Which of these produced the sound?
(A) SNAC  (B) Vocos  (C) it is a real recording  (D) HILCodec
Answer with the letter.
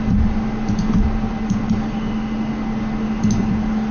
C